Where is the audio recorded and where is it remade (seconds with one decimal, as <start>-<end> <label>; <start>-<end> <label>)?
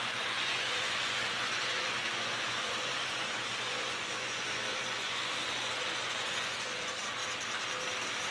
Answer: 0.0-7.2 remade; 7.2-8.3 recorded